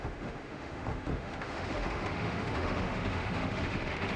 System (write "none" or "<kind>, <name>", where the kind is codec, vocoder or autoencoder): autoencoder, DAC-VAE